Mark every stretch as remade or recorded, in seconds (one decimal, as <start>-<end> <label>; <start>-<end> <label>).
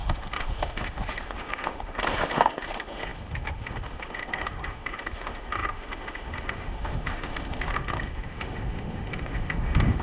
0.0-10.0 remade